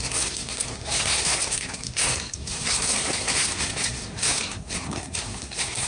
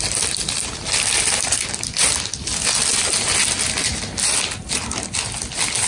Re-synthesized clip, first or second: first